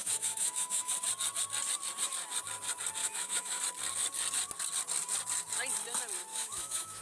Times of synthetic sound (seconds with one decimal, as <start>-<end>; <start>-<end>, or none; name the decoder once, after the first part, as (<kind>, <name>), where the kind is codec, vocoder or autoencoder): 0.0-0.9 (autoencoder, DAC-VAE); 3.0-3.6; 6.3-7.0